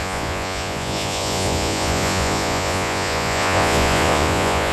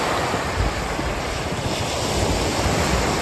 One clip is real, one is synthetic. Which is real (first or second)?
second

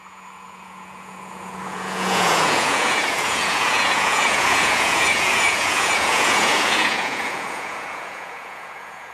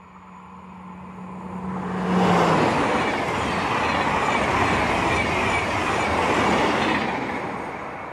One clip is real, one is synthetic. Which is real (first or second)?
second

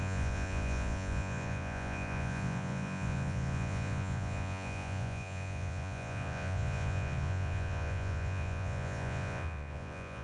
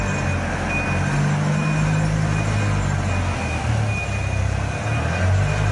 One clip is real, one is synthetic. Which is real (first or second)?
second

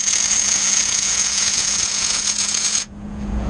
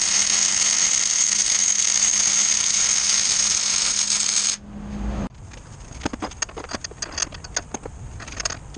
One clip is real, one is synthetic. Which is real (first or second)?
second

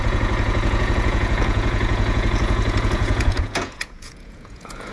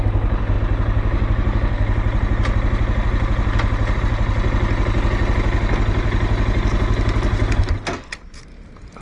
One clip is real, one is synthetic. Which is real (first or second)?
second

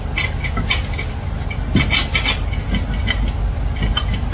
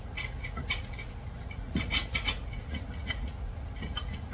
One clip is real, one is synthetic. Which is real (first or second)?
first